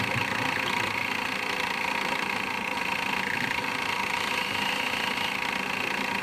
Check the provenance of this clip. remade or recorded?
recorded